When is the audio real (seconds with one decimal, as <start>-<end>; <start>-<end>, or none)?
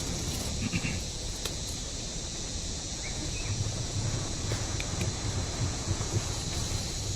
1.7-2.3; 4.8-5.6; 6.4-7.2